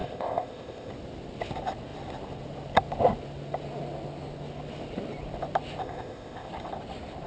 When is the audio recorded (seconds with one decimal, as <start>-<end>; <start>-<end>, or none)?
0.9-5.8; 6.5-7.3